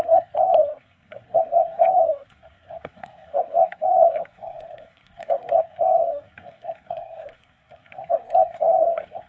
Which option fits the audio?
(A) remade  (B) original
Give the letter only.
A